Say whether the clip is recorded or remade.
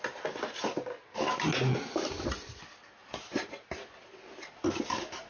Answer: recorded